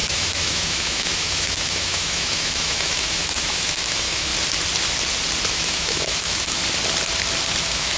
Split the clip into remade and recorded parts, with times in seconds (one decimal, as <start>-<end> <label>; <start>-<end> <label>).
0.0-4.3 remade; 4.3-5.5 recorded; 5.5-6.6 remade; 6.6-7.6 recorded; 7.6-8.0 remade